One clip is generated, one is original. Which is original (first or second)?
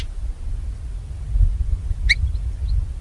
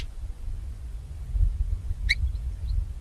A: first